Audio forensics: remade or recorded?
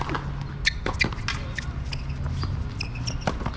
recorded